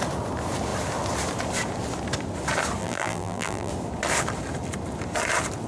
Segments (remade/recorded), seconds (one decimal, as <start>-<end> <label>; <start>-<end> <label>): 0.0-2.8 recorded; 2.8-3.7 remade; 3.7-5.7 recorded